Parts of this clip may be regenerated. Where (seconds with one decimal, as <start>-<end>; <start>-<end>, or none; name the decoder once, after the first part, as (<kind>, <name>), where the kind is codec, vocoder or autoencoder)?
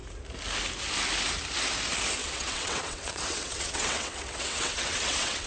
2.2-5.5 (vocoder, WaveNeXt)